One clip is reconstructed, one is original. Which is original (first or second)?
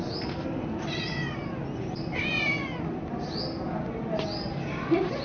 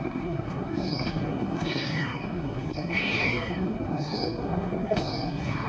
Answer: first